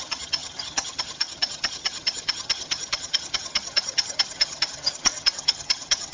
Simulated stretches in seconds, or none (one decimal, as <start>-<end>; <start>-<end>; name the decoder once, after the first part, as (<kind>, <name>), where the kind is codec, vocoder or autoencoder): 0.0-6.1 (vocoder, HiFi-GAN)